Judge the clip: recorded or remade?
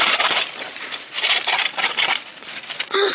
recorded